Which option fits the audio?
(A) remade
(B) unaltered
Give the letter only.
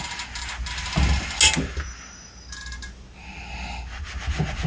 B